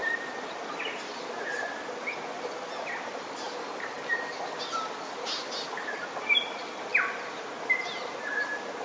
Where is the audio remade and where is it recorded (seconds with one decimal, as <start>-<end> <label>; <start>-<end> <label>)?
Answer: 0.0-8.8 recorded